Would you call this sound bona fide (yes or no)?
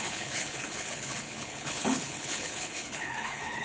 no